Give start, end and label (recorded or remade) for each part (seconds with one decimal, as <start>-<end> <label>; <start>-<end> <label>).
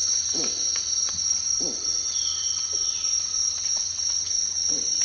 0.0-5.0 remade